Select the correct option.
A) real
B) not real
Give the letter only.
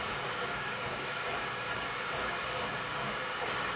B